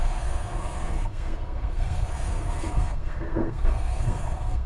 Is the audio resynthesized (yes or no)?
yes